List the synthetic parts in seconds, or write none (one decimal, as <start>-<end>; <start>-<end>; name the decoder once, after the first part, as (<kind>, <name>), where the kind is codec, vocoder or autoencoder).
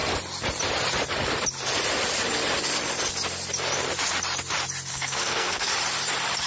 4.9-5.7 (codec, SNAC)